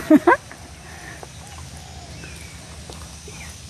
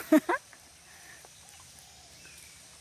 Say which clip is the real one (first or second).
first